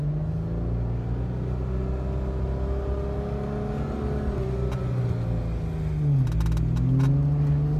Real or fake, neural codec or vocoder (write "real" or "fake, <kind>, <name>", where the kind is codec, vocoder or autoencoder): real